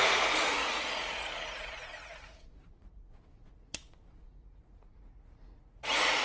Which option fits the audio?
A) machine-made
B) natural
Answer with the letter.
A